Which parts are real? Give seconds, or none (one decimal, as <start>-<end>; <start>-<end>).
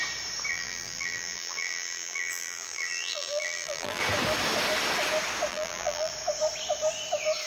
0.0-0.5; 4.0-5.5; 6.1-7.5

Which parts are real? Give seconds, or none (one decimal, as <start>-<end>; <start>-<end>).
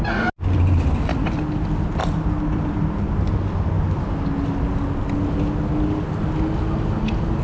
0.0-2.0; 3.1-7.4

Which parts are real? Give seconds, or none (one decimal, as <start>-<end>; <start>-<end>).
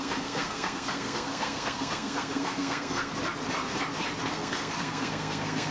3.1-4.2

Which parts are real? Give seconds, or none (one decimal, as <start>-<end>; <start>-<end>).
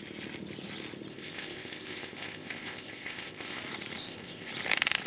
0.0-1.1; 3.6-4.0; 4.5-5.1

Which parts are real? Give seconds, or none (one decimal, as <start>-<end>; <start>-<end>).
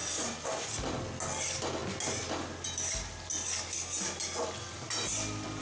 0.0-5.6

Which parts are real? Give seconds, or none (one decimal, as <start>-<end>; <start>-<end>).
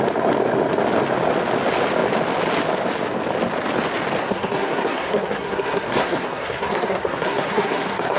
0.0-4.2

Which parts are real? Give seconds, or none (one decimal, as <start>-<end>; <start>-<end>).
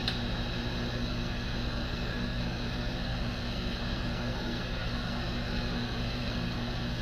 0.0-0.9